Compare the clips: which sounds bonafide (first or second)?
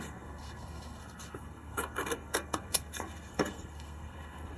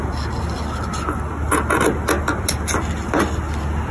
second